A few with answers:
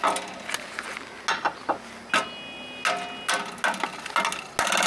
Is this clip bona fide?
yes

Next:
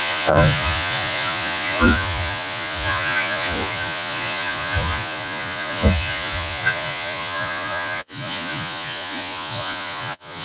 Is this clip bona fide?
no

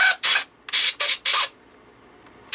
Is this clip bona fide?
yes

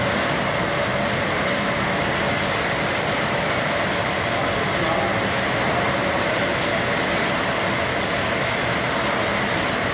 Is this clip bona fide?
yes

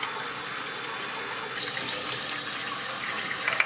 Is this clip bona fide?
yes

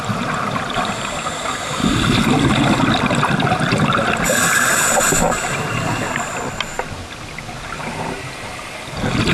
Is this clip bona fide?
yes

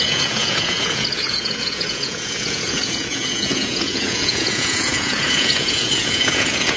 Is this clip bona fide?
no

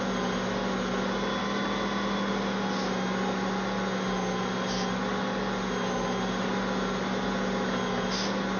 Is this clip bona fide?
yes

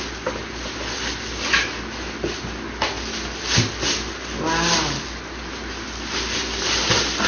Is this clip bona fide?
yes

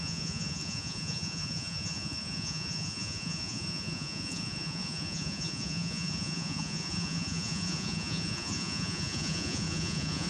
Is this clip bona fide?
no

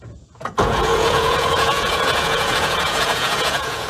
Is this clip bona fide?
no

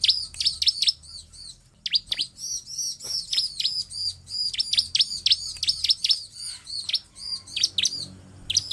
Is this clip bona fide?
yes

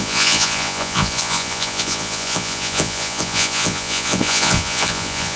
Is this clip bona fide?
no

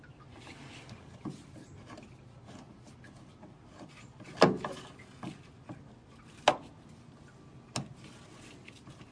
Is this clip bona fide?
yes